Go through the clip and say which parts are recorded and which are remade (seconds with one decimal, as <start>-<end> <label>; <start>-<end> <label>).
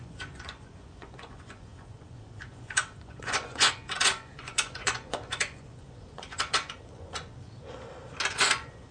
0.0-7.3 remade; 7.3-8.3 recorded; 8.3-8.9 remade